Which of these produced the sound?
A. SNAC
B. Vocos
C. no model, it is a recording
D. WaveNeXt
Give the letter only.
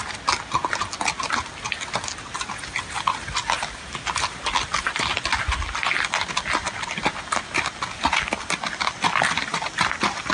C